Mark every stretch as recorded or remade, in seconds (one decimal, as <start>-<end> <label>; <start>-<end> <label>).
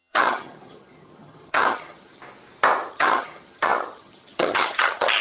0.0-2.2 remade; 2.2-2.9 recorded; 2.9-5.2 remade